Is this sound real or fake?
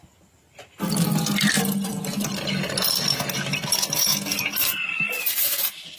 real